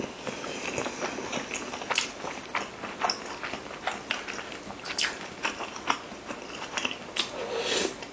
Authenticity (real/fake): real